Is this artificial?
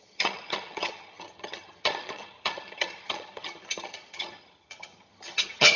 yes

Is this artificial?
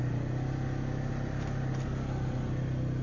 no